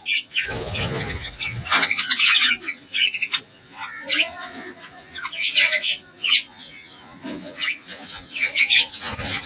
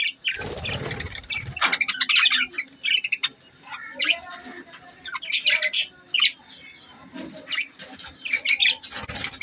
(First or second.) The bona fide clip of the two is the second